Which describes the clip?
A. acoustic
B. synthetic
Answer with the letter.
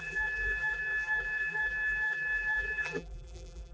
B